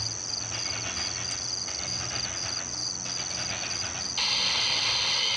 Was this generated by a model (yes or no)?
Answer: no